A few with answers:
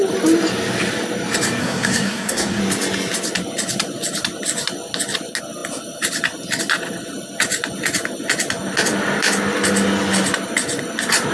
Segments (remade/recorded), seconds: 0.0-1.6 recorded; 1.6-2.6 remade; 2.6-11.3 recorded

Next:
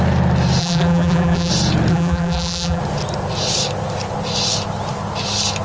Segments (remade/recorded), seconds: 0.0-0.6 recorded; 0.6-1.5 remade; 1.5-1.9 recorded; 1.9-2.8 remade; 2.8-5.6 recorded